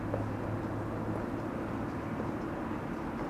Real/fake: real